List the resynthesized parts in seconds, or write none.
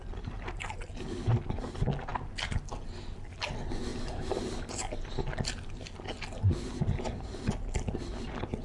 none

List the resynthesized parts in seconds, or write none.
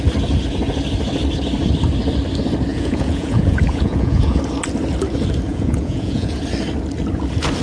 2.7-4.4 (vocoder, Vocos); 5.5-6.4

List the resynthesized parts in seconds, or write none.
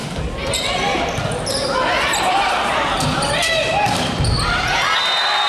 0.0-3.3 (vocoder, BigVGAN v2)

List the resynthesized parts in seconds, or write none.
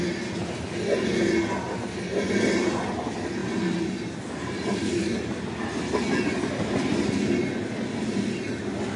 none